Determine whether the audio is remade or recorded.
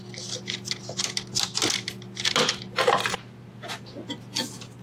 recorded